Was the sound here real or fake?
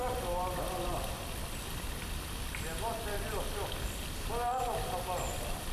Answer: real